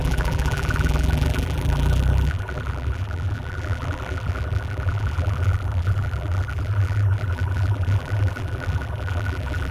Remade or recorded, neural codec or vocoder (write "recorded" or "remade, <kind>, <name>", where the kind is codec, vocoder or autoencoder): remade, vocoder, BigVGAN v2